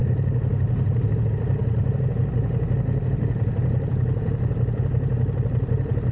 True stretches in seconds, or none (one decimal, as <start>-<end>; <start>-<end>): 0.0-6.1